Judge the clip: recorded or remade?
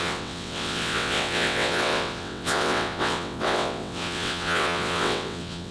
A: remade